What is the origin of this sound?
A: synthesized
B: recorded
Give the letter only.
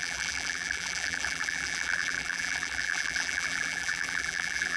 A